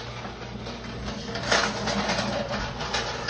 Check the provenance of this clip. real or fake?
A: real